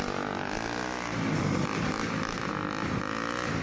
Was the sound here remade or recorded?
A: recorded